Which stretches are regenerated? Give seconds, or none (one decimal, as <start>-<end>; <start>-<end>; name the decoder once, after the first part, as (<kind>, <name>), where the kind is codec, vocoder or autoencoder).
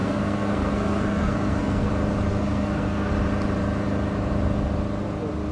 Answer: 0.0-1.9 (codec, SNAC); 2.3-3.1